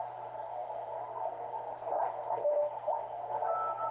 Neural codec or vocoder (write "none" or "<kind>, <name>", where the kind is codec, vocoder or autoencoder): codec, SNAC